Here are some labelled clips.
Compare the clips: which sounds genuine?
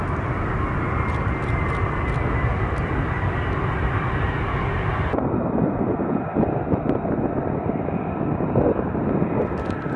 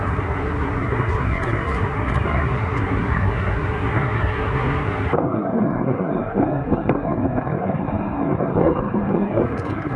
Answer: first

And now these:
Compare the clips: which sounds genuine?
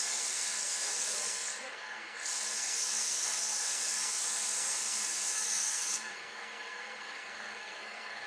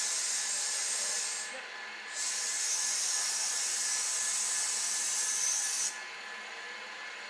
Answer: second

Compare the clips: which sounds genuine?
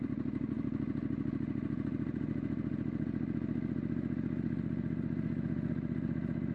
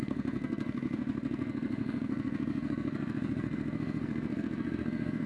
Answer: first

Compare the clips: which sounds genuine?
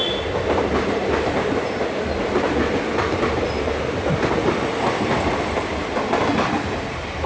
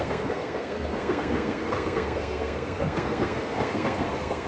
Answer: first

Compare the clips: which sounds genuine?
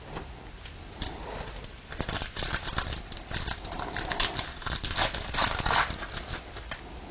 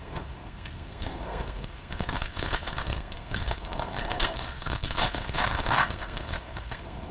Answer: first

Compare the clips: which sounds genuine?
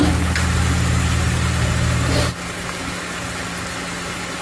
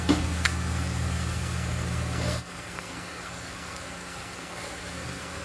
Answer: first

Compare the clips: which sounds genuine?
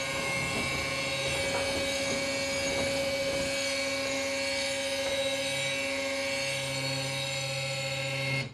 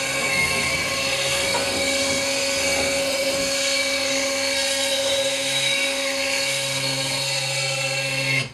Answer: first